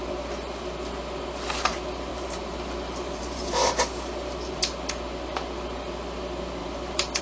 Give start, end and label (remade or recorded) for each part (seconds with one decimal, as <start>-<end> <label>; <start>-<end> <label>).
0.0-2.1 recorded; 2.1-4.6 remade; 4.6-6.6 recorded; 6.6-7.2 remade